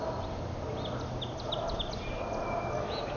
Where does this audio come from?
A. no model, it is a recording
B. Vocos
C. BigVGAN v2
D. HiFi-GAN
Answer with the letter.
A